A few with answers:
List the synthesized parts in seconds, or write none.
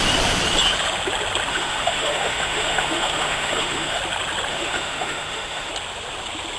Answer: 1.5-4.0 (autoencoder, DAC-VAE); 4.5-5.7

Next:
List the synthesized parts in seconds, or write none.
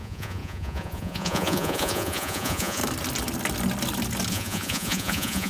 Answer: 0.0-2.8 (vocoder, Vocos); 4.3-5.5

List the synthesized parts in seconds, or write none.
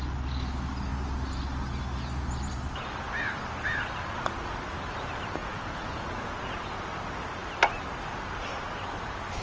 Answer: 5.4-6.6 (vocoder, Vocos)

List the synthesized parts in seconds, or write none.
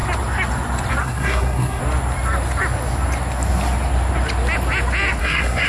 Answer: 1.0-1.8 (codec, SNAC); 5.2-5.7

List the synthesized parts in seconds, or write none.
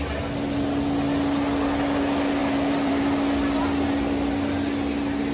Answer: 2.4-3.0 (vocoder, BigVGAN v2)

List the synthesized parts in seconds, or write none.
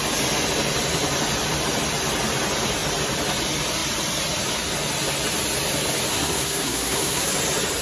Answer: 6.1-7.3 (codec, SNAC)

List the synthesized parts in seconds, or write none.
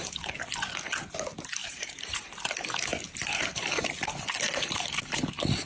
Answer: 1.6-2.4 (vocoder, BigVGAN v2)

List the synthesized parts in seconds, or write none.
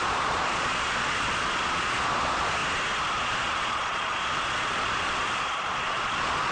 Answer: 0.0-2.6 (vocoder, Vocos); 3.2-6.5